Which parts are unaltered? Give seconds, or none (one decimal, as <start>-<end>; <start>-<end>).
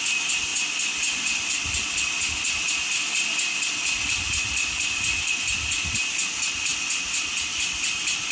0.0-8.3